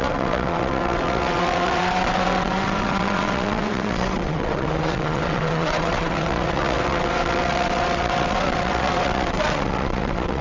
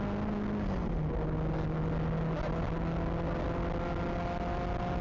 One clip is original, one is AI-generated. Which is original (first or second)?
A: second